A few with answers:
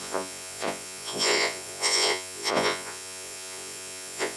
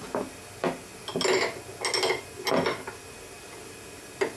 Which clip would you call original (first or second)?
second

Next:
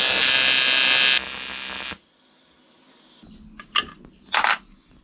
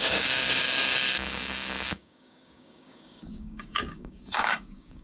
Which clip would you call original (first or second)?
first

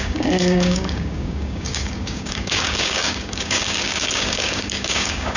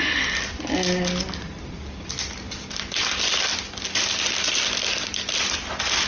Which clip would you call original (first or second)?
second